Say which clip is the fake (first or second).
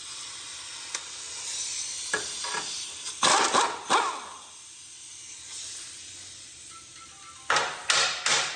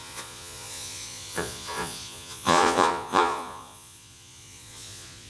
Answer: second